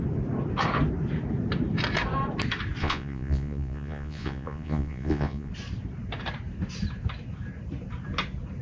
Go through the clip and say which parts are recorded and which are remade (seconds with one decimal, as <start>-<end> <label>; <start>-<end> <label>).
0.0-2.8 recorded; 2.8-5.5 remade; 5.5-8.6 recorded